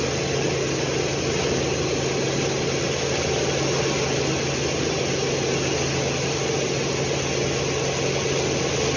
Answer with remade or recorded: recorded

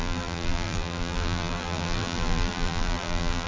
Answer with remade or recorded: remade